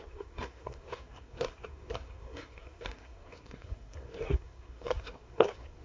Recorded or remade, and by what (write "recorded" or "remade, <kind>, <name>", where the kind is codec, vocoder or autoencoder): remade, codec, SNAC